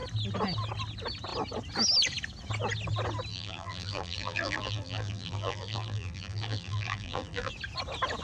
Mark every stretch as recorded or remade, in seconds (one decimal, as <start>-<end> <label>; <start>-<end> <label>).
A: 0.0-3.3 recorded; 3.3-7.5 remade; 7.5-8.2 recorded